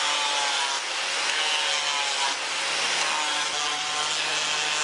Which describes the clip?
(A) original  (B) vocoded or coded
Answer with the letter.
A